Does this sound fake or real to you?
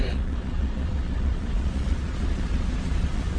fake